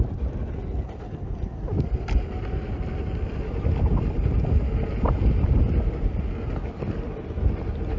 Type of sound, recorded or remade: recorded